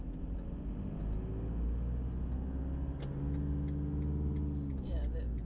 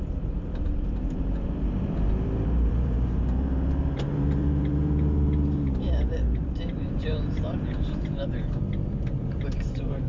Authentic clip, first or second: first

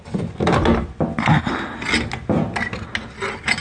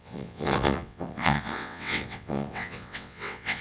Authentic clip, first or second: first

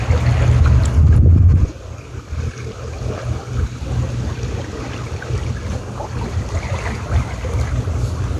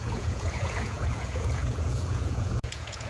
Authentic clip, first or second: first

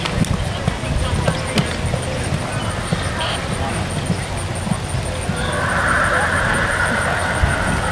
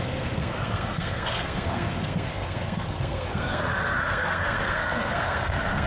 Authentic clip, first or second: first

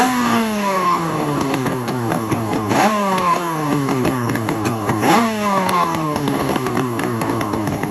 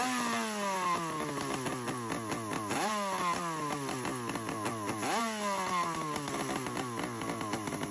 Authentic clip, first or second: second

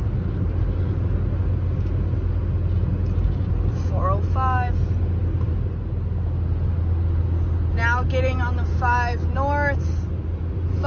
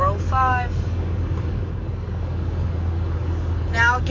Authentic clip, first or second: first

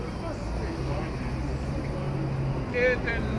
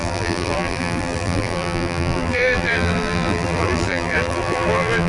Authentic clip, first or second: first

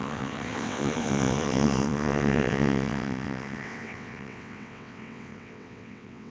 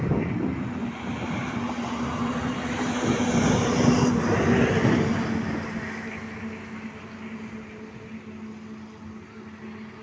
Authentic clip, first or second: second